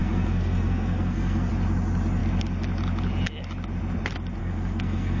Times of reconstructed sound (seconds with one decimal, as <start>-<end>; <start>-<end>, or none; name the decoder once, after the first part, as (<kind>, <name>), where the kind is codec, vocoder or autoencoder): 0.0-1.5 (codec, SNAC); 4.4-5.2